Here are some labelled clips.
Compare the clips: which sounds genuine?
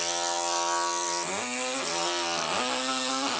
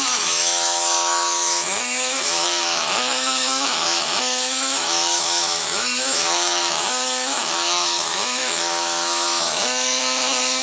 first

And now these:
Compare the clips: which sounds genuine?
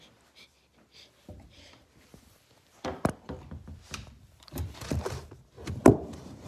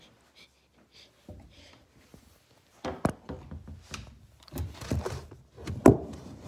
second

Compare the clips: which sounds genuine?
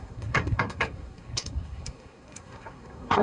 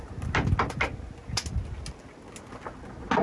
second